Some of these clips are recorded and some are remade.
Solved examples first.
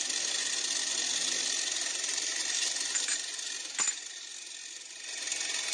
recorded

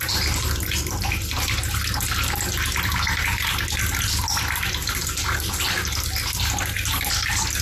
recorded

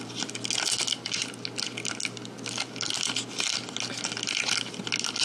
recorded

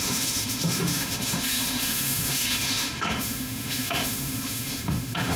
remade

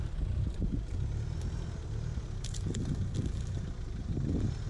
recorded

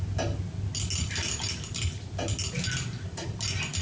recorded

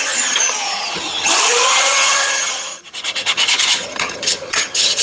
remade